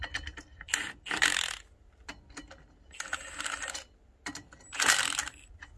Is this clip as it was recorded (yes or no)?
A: yes